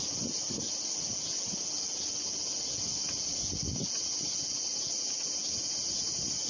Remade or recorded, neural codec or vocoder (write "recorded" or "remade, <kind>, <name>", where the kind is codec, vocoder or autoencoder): recorded